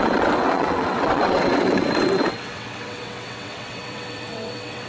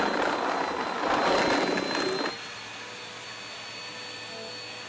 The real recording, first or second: second